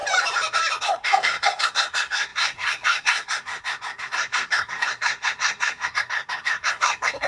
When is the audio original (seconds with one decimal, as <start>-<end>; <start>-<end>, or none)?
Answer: 0.0-0.8